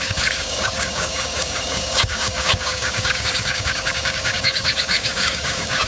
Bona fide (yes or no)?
no